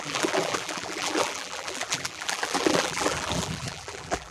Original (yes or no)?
no